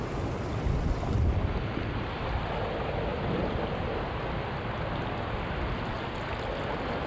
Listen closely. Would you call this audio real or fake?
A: real